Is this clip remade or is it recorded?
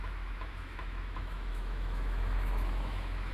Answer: remade